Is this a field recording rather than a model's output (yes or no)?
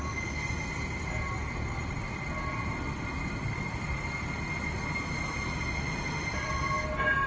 yes